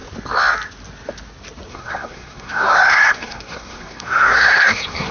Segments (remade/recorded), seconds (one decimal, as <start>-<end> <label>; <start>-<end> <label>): 0.0-1.7 recorded; 1.7-5.1 remade